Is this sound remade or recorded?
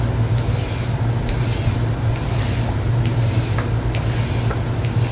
recorded